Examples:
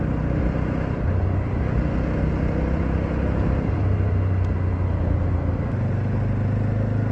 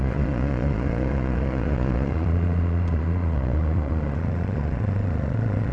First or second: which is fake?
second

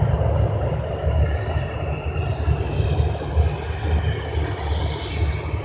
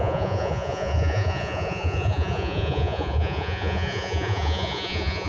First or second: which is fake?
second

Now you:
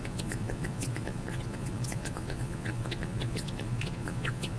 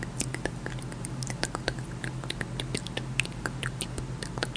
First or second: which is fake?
first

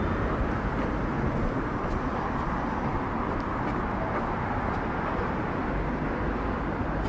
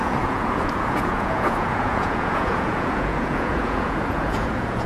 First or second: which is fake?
second